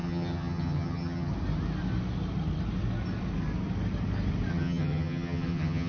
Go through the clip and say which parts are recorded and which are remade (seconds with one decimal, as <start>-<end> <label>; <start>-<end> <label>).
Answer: 0.0-1.3 remade; 1.3-4.5 recorded; 4.5-5.9 remade